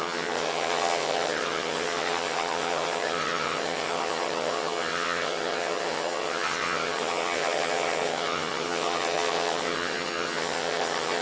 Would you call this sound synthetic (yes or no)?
yes